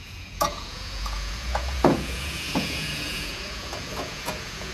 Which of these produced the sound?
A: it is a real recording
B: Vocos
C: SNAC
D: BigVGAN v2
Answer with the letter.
B